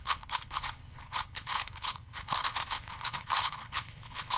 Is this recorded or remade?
remade